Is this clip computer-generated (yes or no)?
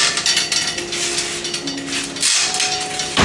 no